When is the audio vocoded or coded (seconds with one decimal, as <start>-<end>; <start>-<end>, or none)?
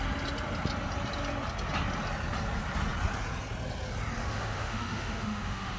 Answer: 4.2-5.8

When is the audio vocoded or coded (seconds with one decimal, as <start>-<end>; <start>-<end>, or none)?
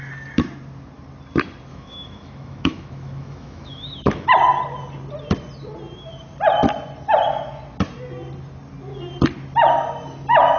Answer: 1.7-4.3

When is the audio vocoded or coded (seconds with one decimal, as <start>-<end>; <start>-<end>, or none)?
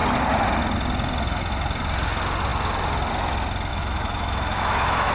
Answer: 3.7-5.1